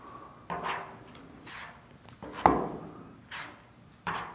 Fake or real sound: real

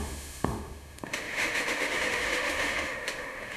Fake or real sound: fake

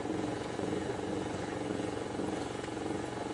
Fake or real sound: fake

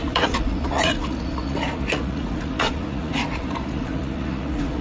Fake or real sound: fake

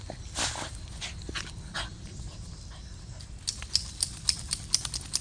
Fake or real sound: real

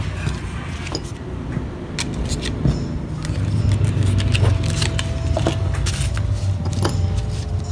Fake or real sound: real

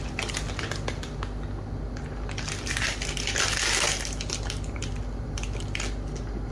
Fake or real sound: real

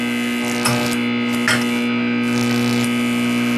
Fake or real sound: real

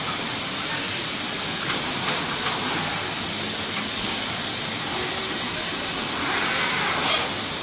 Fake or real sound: real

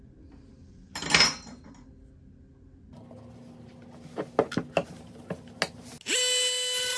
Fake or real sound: real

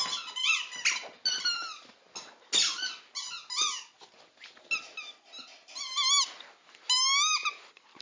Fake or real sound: real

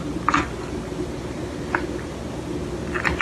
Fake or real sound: real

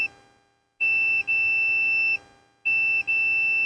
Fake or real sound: real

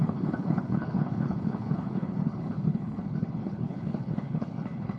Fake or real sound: fake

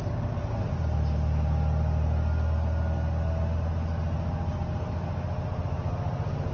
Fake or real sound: real